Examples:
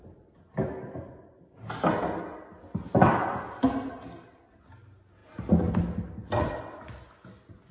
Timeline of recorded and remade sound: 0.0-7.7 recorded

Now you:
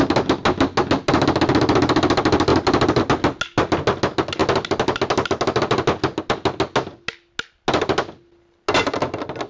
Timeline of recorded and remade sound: 0.0-9.5 recorded

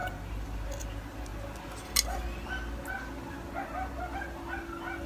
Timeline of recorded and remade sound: 0.0-5.1 recorded

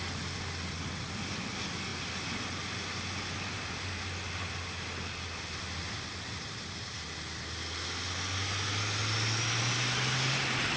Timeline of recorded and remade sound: 0.0-10.8 recorded

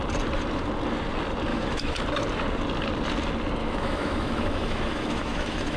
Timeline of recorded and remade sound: 0.0-1.5 recorded; 1.5-2.0 remade; 2.0-3.6 recorded; 3.6-5.8 remade

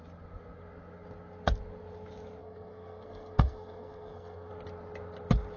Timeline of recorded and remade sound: 0.0-2.4 recorded; 2.4-4.5 remade; 4.5-5.6 recorded

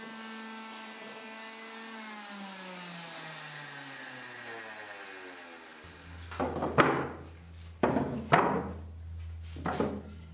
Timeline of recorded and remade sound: 0.0-10.3 recorded

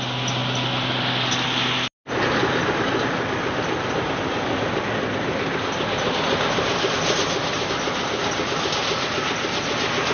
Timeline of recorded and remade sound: 0.0-10.1 recorded